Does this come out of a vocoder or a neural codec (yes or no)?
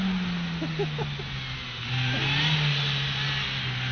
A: no